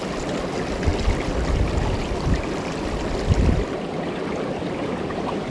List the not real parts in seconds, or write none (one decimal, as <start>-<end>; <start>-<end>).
none